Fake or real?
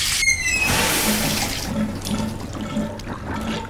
real